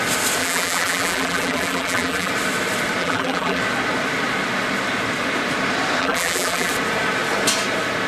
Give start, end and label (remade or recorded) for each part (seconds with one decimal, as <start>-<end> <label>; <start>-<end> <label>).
0.0-0.4 recorded; 0.4-2.3 remade; 2.3-3.0 recorded; 3.0-3.6 remade; 3.6-6.0 recorded; 6.0-6.7 remade; 6.7-8.1 recorded